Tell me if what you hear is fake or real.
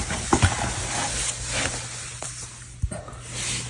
real